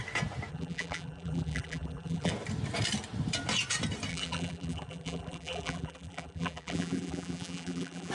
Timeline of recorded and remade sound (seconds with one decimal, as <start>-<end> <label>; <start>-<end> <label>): 0.0-0.5 recorded; 0.5-2.3 remade; 2.3-4.1 recorded; 4.1-8.1 remade